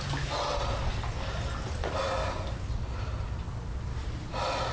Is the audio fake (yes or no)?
no